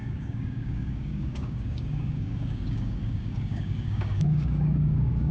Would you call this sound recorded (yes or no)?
no